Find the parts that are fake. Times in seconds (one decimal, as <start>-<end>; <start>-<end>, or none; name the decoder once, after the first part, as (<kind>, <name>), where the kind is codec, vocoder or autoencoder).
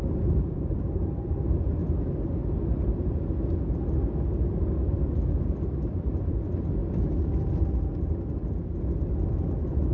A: 0.0-1.8 (vocoder, BigVGAN v2); 6.3-6.8; 9.5-9.9